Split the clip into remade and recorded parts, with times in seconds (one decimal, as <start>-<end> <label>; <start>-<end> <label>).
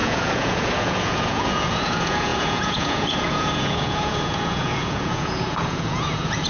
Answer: 0.0-6.5 remade